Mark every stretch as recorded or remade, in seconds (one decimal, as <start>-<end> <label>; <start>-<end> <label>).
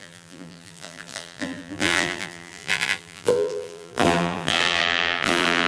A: 0.0-5.7 remade